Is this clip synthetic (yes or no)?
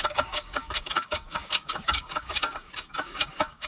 yes